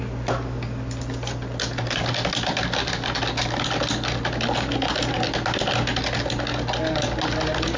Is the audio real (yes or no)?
yes